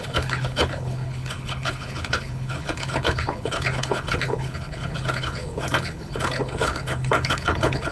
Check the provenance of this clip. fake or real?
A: fake